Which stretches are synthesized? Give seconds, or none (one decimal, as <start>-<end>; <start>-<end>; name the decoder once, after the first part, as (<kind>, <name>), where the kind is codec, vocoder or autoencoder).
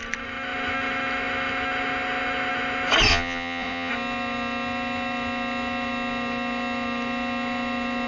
3.1-3.9 (vocoder, Vocos)